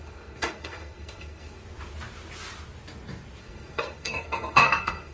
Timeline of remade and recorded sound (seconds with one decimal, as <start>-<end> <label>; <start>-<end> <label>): 0.0-1.6 remade; 1.6-3.4 recorded; 3.4-5.1 remade